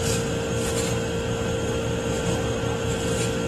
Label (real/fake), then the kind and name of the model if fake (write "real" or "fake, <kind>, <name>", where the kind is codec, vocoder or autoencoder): real